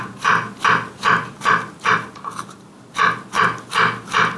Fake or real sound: real